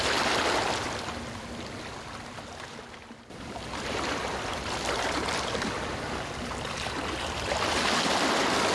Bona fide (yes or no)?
yes